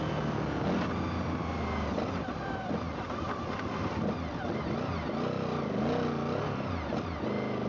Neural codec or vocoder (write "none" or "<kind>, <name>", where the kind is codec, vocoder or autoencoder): none